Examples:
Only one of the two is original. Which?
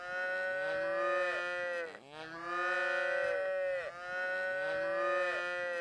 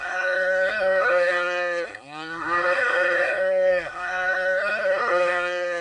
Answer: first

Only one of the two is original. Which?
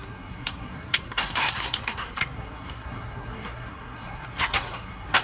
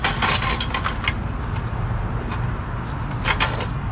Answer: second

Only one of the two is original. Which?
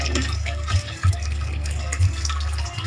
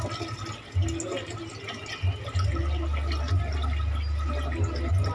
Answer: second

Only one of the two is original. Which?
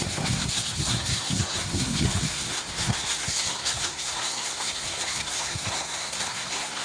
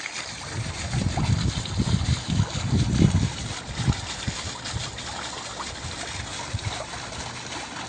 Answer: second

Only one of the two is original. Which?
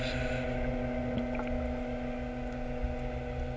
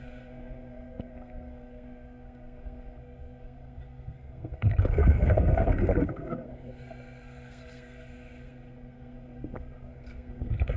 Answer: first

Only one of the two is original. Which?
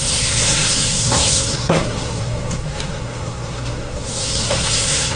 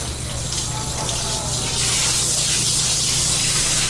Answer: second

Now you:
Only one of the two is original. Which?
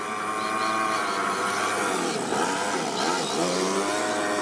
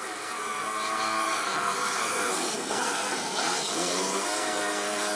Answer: first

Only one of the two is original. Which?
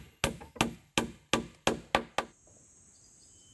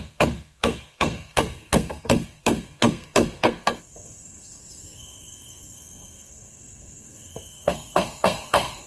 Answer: first